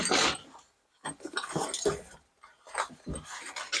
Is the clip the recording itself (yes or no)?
yes